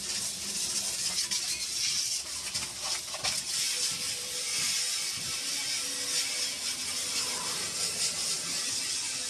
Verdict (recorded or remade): recorded